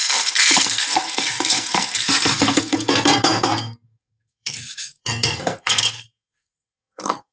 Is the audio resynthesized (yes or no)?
yes